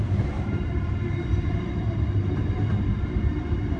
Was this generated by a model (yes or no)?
yes